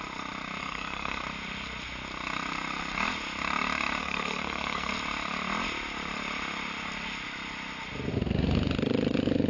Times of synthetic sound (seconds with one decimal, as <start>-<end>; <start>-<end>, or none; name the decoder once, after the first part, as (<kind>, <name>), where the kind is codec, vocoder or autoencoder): 0.6-1.2 (codec, SNAC); 4.0-4.9